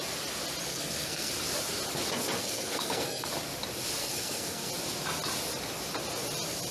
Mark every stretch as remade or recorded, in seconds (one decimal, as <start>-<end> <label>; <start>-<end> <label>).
0.0-0.7 recorded; 0.7-1.3 remade; 1.3-2.4 recorded; 2.4-3.3 remade; 3.3-4.0 recorded; 4.0-4.7 remade; 4.7-6.7 recorded